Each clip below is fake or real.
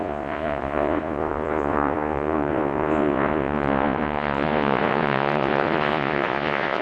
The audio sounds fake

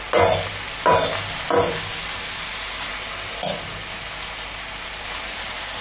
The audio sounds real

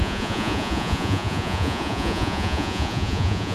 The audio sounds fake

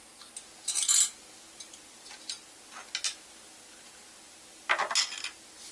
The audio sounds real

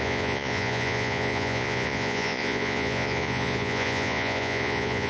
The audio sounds fake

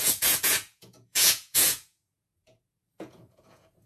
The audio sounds fake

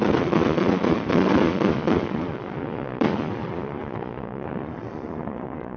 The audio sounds fake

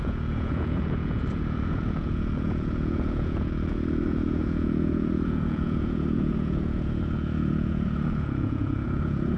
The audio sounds fake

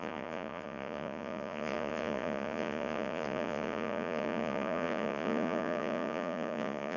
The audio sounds fake